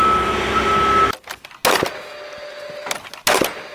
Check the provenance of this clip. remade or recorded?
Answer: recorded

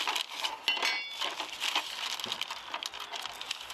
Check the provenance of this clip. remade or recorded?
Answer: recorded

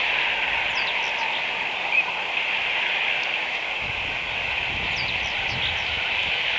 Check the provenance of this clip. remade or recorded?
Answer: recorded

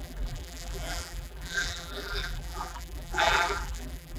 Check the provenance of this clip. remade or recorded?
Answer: remade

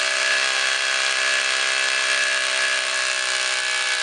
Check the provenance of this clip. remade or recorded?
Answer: recorded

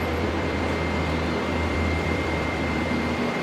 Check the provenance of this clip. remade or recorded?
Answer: remade